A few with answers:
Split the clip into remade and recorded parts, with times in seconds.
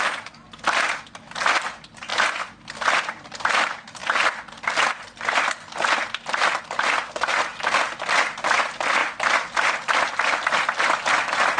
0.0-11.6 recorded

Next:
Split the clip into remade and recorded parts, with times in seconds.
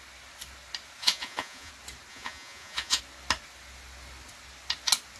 0.0-1.0 recorded; 1.0-1.7 remade; 1.7-2.1 recorded; 2.1-3.0 remade; 3.0-5.2 recorded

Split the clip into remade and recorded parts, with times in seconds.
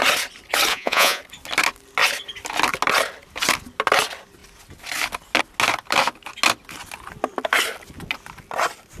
0.0-0.7 recorded; 0.7-1.2 remade; 1.2-9.0 recorded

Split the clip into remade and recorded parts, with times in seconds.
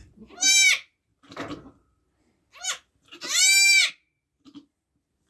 0.0-5.3 recorded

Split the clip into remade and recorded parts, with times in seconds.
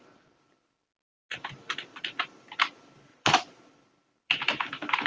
0.0-3.1 recorded; 3.1-3.8 remade; 3.8-5.1 recorded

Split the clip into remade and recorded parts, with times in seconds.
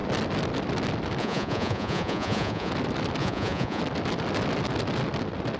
0.0-1.2 recorded; 1.2-2.7 remade; 2.7-3.2 recorded; 3.2-3.8 remade; 3.8-5.6 recorded